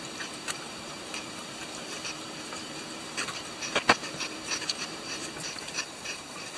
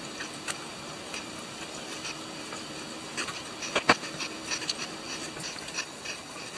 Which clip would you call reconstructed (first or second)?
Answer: first